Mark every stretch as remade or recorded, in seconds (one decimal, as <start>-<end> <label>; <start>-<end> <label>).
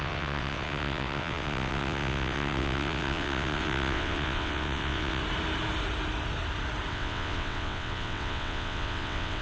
0.0-5.2 remade; 5.2-6.9 recorded; 6.9-9.4 remade